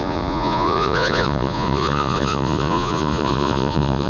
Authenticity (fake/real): fake